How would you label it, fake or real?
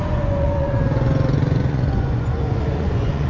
fake